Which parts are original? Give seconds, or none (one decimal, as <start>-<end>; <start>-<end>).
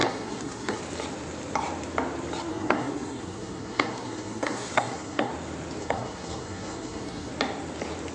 0.8-2.5; 5.3-5.8; 7.3-8.1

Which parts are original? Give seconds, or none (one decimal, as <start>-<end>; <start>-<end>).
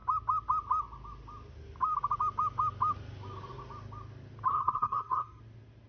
0.0-4.5; 5.4-5.9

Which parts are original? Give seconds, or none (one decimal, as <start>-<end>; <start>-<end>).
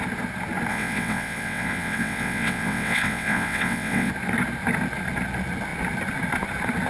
0.0-0.7; 4.1-6.9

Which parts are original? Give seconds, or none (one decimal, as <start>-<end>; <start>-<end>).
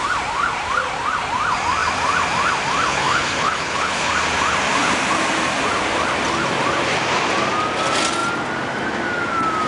0.0-2.9; 4.1-9.7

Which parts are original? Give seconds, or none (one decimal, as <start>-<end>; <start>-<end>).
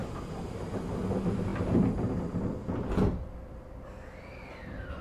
0.0-5.0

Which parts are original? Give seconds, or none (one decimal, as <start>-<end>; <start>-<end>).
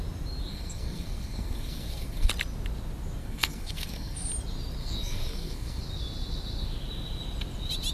0.0-0.5; 2.3-3.2; 4.3-4.8; 5.8-7.9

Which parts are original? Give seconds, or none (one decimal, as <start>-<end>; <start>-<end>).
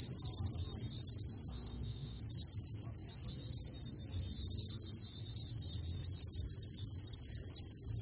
0.0-1.5; 2.2-8.0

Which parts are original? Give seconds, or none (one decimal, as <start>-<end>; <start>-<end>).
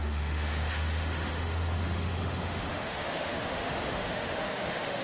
none